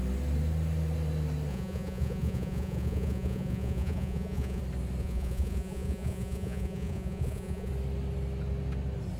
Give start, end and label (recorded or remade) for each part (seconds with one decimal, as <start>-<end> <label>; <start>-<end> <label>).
0.0-1.5 recorded; 1.5-4.6 remade; 4.6-5.0 recorded; 5.0-7.7 remade; 7.7-9.2 recorded